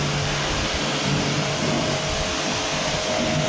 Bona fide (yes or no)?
yes